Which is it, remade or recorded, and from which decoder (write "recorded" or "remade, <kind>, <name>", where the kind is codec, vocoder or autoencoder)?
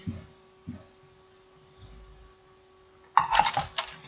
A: recorded